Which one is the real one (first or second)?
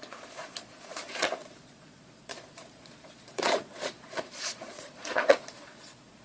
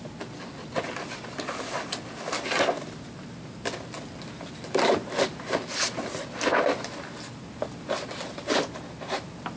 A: second